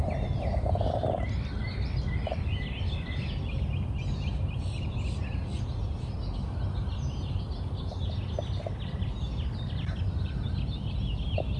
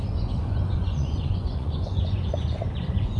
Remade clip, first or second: second